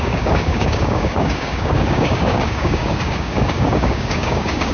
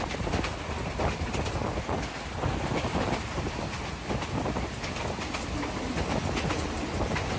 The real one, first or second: second